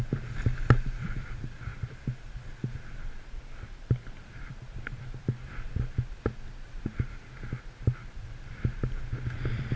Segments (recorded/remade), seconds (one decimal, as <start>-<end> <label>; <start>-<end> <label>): 0.0-8.0 recorded; 8.0-8.8 remade; 8.8-9.8 recorded